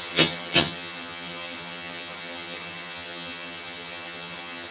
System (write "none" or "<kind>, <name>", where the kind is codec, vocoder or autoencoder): vocoder, HiFi-GAN